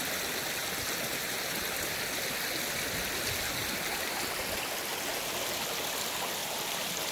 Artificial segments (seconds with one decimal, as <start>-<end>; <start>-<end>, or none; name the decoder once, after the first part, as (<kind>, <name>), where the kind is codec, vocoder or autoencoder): none